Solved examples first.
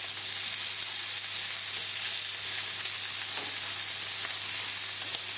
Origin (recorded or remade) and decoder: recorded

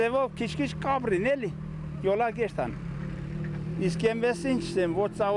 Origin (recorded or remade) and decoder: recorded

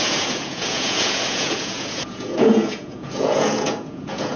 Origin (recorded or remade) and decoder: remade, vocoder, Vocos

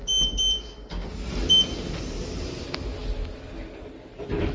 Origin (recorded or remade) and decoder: recorded